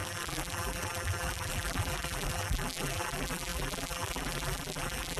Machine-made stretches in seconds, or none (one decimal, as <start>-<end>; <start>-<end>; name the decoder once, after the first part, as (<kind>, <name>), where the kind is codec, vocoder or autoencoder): 0.0-5.2 (vocoder, BigVGAN v2)